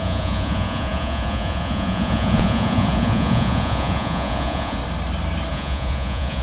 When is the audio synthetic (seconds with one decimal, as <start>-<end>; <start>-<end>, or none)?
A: 0.0-4.8; 5.5-6.4